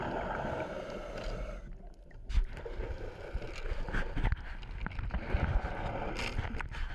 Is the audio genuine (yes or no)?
yes